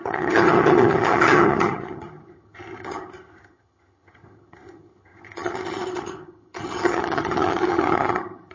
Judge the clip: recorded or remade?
remade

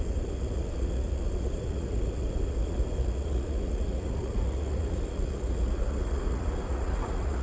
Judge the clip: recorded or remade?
remade